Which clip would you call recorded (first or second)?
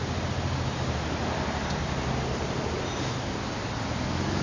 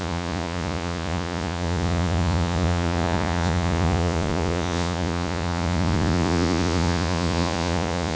first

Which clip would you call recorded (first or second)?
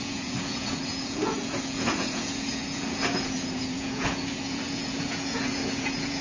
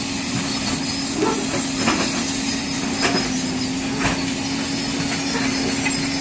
second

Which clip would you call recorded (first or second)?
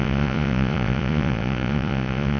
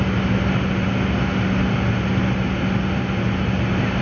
second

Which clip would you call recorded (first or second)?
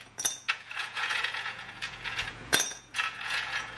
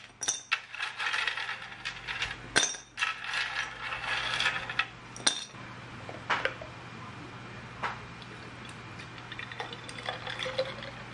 second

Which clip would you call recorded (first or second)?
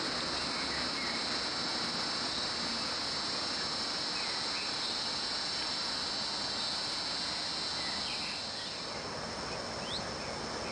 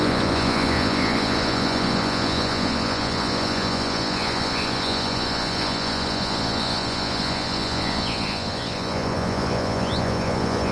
first